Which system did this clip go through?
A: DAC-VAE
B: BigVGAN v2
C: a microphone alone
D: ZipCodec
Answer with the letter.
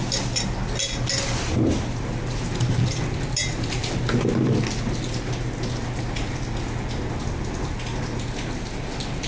C